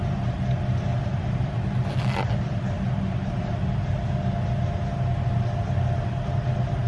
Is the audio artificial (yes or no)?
no